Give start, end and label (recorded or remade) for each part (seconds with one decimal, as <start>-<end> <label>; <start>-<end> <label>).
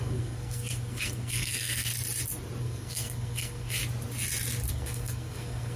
0.0-1.9 remade; 1.9-2.6 recorded; 2.6-3.8 remade; 3.8-4.7 recorded; 4.7-5.8 remade